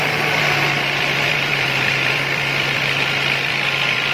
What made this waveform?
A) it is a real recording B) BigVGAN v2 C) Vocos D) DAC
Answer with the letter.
B